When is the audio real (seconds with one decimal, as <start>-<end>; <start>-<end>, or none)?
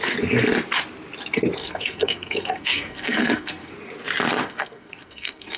0.0-1.6; 3.7-4.4